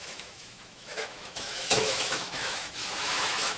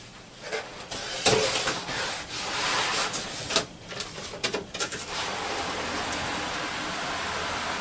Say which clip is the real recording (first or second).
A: second